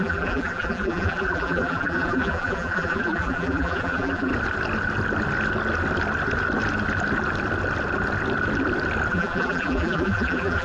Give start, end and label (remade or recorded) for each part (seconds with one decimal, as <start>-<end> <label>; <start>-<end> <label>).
0.0-4.3 remade; 4.3-9.1 recorded; 9.1-10.6 remade